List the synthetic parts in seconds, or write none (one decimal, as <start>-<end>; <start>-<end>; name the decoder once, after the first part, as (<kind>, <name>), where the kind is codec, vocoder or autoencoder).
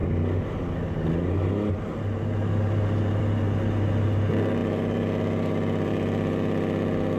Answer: none